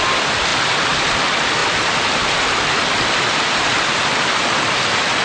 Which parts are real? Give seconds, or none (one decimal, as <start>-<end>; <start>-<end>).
0.0-5.2